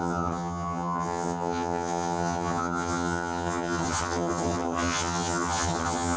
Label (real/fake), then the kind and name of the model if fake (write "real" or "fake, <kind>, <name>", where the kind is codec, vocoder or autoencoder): fake, vocoder, HiFi-GAN